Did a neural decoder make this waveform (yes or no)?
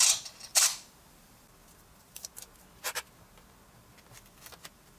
yes